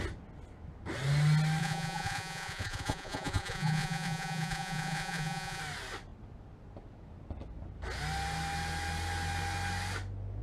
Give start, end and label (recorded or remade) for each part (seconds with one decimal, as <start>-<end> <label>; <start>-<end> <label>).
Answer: 0.0-1.6 recorded; 1.6-5.6 remade; 5.6-10.4 recorded

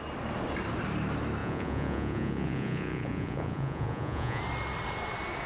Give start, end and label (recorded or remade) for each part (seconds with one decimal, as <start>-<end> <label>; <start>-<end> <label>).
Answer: 0.0-1.4 recorded; 1.4-4.4 remade; 4.4-5.5 recorded

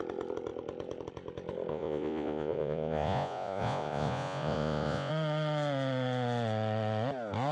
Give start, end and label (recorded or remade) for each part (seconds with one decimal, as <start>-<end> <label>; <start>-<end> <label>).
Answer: 0.0-1.7 recorded; 1.7-5.1 remade; 5.1-7.5 recorded

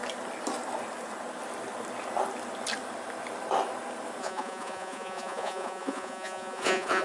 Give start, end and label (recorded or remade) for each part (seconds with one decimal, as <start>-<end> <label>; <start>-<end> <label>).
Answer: 0.0-4.2 recorded; 4.2-7.0 remade

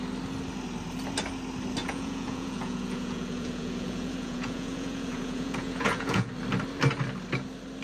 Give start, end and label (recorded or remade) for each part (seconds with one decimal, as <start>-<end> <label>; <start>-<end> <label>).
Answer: 0.0-1.8 recorded; 1.8-6.3 remade; 6.3-7.8 recorded

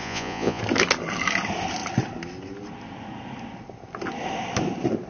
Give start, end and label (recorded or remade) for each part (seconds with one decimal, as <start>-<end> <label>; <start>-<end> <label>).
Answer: 0.0-0.6 remade; 0.6-5.1 recorded

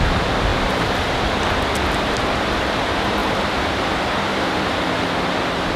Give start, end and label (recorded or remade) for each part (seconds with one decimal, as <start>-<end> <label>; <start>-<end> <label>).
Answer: 0.0-5.8 recorded

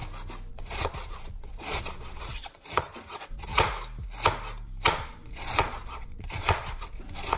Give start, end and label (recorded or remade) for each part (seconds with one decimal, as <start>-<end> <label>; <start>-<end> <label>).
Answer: 0.0-0.5 recorded; 0.5-3.5 remade; 3.5-4.9 recorded; 4.9-7.4 remade